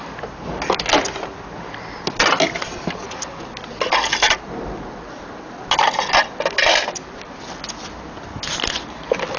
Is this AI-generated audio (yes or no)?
no